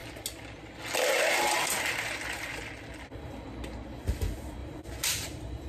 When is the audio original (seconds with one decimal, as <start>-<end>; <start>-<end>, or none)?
0.0-4.6